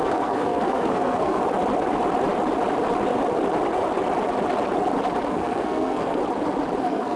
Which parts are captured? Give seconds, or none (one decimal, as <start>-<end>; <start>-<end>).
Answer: 1.4-5.3; 6.2-6.8